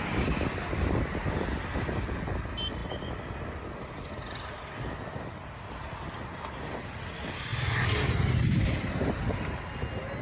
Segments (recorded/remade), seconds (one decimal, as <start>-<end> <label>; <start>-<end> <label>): 0.0-10.2 recorded